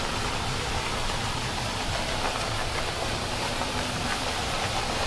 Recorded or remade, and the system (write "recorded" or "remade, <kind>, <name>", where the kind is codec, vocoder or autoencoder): remade, vocoder, BigVGAN v2